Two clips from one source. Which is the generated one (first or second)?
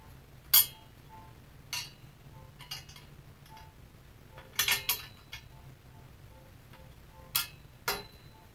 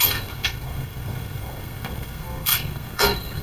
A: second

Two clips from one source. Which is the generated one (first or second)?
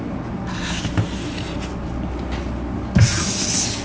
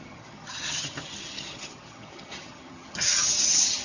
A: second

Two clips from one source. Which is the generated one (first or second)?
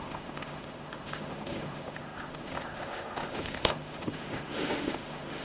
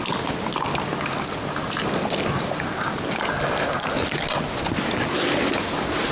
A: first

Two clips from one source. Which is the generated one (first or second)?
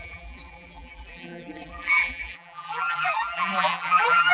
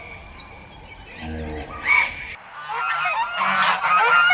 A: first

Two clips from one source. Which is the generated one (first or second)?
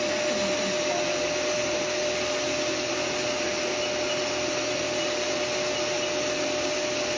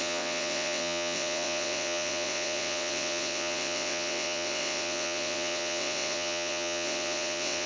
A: second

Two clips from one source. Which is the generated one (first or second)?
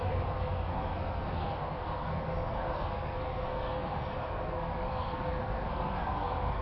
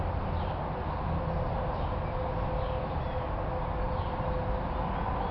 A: first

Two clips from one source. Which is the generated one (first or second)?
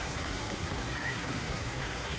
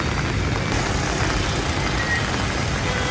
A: first